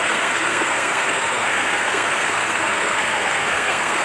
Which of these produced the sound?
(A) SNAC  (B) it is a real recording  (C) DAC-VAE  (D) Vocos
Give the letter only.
A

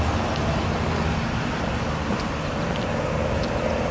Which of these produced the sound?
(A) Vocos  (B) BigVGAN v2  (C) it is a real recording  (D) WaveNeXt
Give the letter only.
C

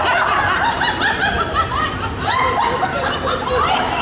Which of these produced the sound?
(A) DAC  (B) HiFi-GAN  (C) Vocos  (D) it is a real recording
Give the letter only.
D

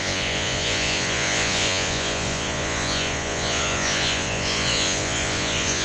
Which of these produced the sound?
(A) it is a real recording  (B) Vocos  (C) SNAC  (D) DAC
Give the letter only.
B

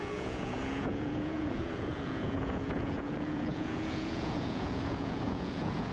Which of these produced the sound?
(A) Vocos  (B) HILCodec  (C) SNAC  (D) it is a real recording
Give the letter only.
A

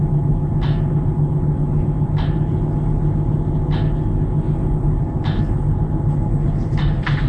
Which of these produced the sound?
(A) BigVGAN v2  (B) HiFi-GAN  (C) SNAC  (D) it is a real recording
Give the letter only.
D